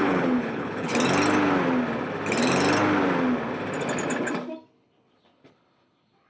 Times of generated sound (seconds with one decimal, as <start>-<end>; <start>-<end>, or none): 0.0-0.9; 4.7-6.3